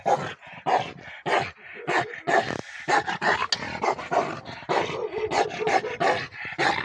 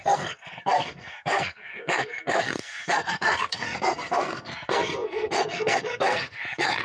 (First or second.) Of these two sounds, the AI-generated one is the second